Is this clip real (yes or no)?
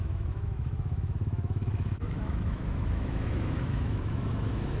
no